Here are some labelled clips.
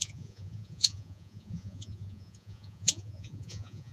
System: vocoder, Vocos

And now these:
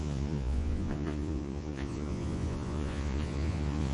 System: vocoder, Vocos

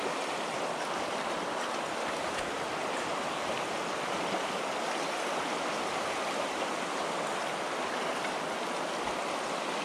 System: none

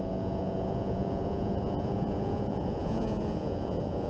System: vocoder, Vocos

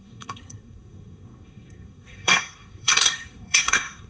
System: codec, SNAC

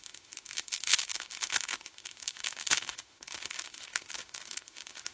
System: autoencoder, DAC-VAE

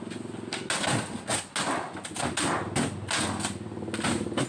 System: none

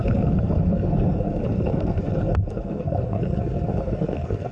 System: codec, SNAC